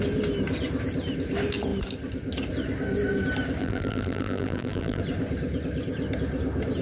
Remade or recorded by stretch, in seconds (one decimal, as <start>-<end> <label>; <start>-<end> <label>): 0.0-3.6 recorded; 3.6-5.0 remade; 5.0-6.8 recorded